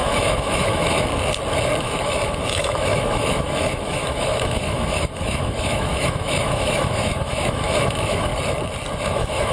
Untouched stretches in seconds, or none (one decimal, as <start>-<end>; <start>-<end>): 1.1-1.8; 8.3-9.1

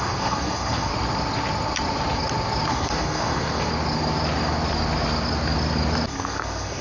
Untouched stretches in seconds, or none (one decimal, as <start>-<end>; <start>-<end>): 0.9-2.7; 3.7-6.1

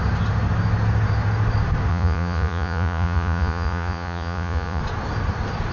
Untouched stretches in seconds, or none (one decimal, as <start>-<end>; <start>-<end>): 0.0-1.9; 4.8-5.7

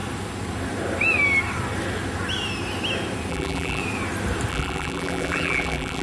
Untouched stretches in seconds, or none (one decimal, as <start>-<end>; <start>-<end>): 0.0-3.3; 3.8-4.5

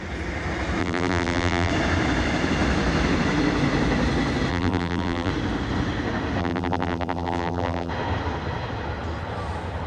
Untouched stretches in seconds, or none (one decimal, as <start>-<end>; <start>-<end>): 0.0-0.8; 1.7-4.5; 5.3-6.4; 7.9-9.9

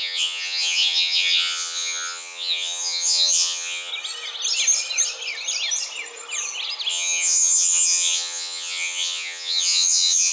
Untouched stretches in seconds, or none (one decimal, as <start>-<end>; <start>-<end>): 3.9-6.9